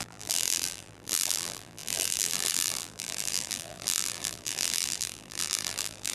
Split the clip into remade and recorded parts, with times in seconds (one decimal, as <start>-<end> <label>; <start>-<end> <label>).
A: 0.0-6.1 remade